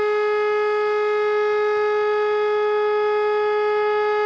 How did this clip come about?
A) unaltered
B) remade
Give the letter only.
A